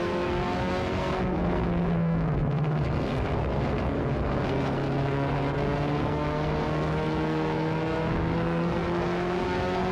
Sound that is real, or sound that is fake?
fake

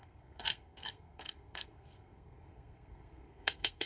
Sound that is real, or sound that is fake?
fake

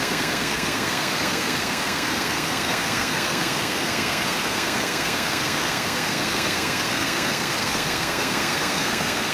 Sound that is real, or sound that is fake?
fake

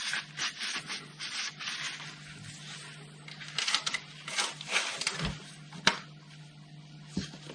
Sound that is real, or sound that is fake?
real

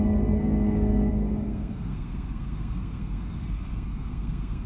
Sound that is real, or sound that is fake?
fake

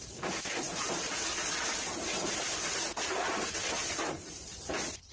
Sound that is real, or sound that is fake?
real